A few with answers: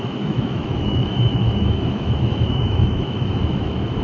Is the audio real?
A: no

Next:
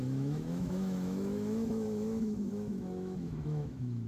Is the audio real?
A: no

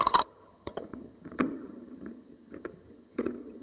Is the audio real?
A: no